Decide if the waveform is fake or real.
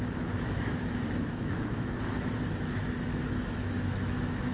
fake